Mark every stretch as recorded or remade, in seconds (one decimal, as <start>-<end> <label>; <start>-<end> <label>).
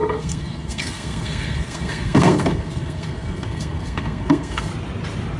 0.0-4.7 remade; 4.7-5.4 recorded